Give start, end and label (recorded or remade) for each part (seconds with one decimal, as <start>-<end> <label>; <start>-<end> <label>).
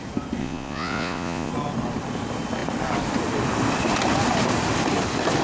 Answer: 0.0-0.4 recorded; 0.4-1.5 remade; 1.5-5.4 recorded